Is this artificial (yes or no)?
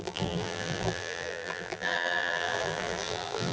yes